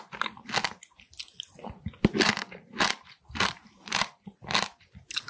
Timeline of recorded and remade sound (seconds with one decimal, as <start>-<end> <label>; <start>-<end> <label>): 0.0-2.4 recorded; 2.4-5.3 remade